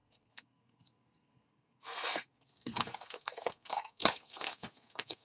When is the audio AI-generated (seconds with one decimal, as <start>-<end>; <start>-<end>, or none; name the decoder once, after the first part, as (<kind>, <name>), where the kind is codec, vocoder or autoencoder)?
0.0-5.2 (codec, SNAC)